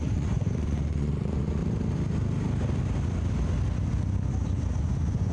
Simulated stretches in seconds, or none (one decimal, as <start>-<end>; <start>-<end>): 0.0-1.6; 4.8-5.3